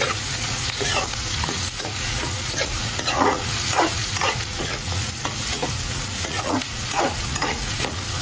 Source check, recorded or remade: remade